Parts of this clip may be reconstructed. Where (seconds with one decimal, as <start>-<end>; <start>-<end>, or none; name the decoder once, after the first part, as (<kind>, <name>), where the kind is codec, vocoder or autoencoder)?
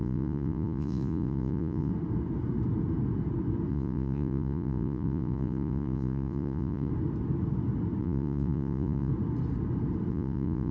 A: 0.0-1.9 (vocoder, Vocos); 3.7-6.9; 8.0-9.1; 10.1-10.7